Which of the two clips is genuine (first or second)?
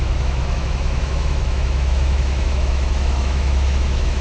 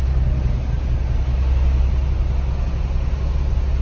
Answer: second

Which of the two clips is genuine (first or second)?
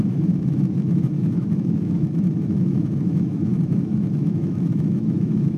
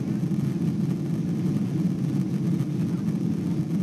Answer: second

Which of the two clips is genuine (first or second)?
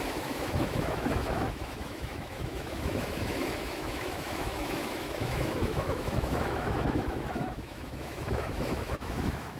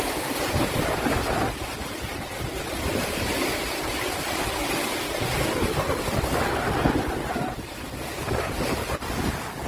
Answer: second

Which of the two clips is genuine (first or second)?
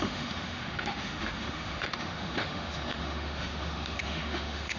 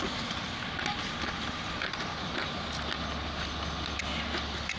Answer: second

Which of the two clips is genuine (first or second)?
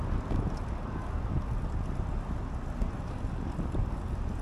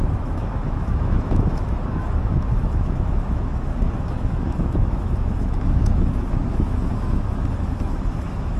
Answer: first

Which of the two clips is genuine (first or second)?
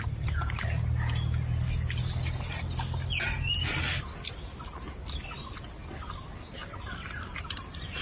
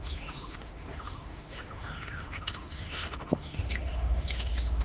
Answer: first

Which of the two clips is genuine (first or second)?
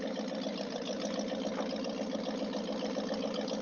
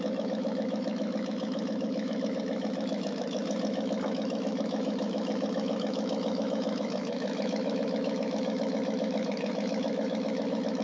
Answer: first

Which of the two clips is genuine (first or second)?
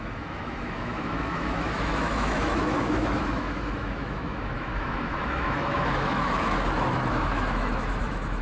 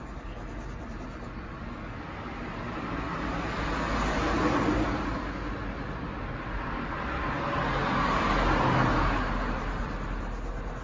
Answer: second